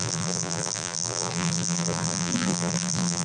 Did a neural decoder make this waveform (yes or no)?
yes